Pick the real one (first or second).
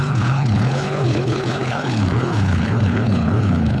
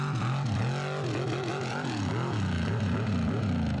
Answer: second